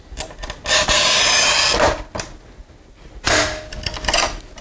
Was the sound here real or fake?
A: real